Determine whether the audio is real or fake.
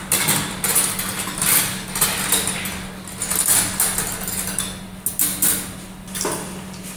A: real